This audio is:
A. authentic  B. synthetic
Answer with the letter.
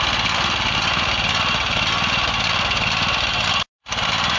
A